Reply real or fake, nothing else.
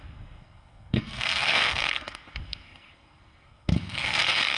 fake